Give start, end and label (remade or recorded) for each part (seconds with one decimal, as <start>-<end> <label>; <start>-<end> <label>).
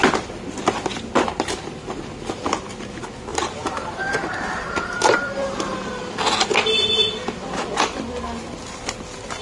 0.0-3.3 recorded; 3.3-5.9 remade; 5.9-9.4 recorded